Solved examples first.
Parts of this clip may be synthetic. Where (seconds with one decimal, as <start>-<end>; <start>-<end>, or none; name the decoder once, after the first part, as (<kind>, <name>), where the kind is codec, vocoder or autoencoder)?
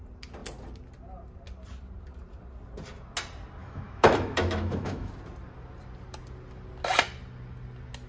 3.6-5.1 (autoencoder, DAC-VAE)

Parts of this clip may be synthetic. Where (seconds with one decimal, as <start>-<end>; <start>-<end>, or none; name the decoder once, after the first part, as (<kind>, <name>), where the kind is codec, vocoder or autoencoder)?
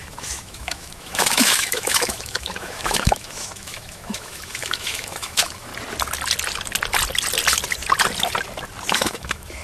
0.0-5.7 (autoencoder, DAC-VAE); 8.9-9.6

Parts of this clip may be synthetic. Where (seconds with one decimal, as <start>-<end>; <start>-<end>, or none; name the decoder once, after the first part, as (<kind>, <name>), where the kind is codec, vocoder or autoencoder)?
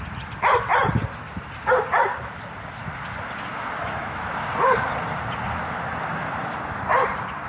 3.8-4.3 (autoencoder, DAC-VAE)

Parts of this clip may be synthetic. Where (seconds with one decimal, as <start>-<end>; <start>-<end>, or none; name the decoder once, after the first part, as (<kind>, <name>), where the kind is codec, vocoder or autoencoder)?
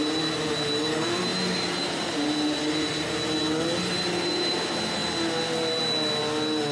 none